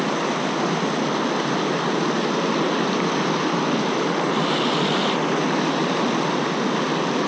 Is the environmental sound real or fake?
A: real